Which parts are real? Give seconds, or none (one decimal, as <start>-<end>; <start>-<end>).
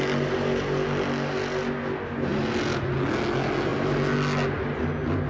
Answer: 0.0-5.3